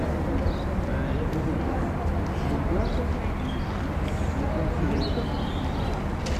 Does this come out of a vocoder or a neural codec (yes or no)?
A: no